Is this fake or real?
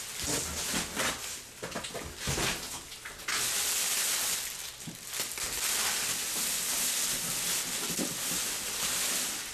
real